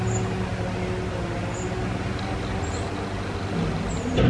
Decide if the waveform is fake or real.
real